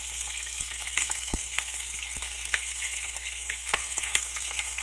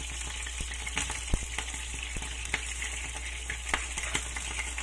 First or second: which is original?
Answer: second